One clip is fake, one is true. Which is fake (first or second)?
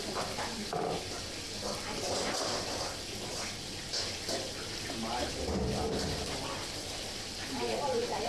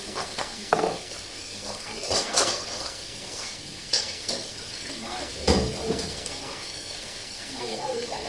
second